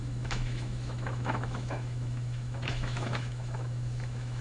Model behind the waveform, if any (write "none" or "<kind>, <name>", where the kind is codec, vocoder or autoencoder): autoencoder, DAC-VAE